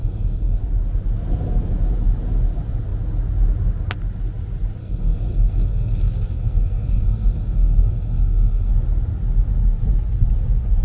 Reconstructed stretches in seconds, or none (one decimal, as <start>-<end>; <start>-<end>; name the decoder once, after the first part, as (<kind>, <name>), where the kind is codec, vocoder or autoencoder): 0.0-0.6 (codec, SNAC); 4.8-8.7